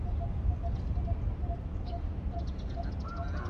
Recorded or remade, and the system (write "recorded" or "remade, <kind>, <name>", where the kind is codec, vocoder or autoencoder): recorded